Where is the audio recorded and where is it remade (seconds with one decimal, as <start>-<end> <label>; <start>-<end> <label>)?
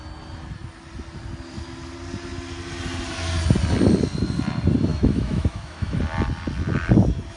0.0-4.9 recorded; 4.9-6.0 remade; 6.0-7.4 recorded